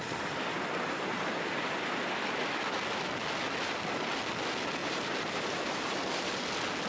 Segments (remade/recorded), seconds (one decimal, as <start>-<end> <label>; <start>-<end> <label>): 0.0-2.1 remade; 2.1-4.8 recorded; 4.8-6.3 remade; 6.3-6.9 recorded

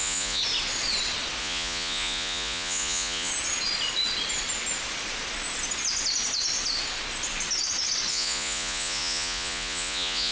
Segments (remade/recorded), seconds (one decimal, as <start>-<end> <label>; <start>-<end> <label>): 0.0-0.4 remade; 0.4-1.4 recorded; 1.4-3.3 remade; 3.3-8.1 recorded; 8.1-10.3 remade

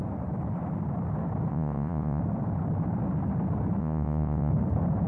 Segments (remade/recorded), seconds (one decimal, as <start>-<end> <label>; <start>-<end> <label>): 0.0-1.5 recorded; 1.5-2.2 remade; 2.2-3.8 recorded; 3.8-4.5 remade; 4.5-5.1 recorded